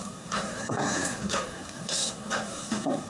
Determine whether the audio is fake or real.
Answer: fake